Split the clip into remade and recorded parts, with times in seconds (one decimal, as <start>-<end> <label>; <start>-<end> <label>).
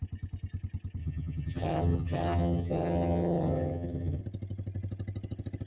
0.0-1.0 recorded; 1.0-4.2 remade; 4.2-5.7 recorded